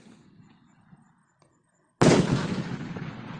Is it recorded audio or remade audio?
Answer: recorded